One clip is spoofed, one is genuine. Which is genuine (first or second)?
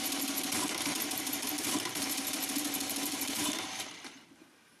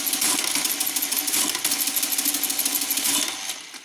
second